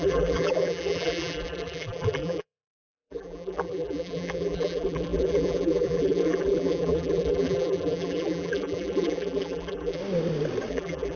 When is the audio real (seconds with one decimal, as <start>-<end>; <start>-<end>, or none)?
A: 10.0-10.7